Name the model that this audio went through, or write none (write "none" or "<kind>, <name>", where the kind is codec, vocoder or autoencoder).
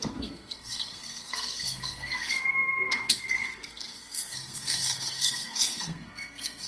codec, SNAC